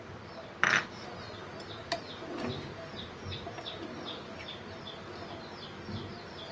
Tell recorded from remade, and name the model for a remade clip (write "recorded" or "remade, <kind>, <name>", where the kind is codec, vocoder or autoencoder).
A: recorded